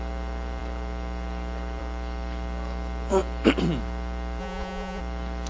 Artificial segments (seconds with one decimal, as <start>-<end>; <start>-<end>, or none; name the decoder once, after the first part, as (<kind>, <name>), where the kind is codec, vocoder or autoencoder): 4.4-5.0 (vocoder, Vocos)